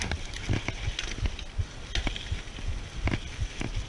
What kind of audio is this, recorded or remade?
recorded